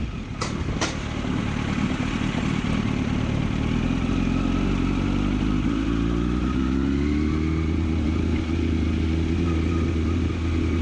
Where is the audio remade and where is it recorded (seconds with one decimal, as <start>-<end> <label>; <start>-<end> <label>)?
0.0-10.8 recorded